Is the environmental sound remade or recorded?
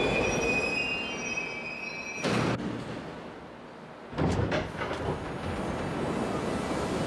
recorded